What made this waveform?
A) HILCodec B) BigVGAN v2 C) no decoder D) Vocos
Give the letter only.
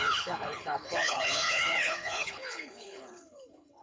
A